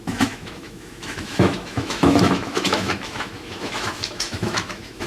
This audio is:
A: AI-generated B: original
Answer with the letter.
A